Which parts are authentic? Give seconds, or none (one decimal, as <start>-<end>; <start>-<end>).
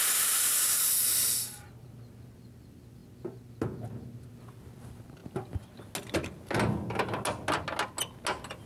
0.0-8.7